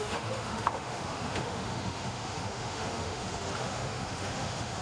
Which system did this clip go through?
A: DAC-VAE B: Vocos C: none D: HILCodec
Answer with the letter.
A